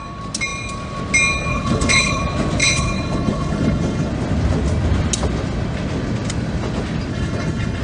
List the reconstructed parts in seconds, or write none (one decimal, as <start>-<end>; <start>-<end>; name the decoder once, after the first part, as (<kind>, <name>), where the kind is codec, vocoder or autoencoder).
1.5-2.2 (codec, HILCodec); 2.6-4.1; 7.1-7.8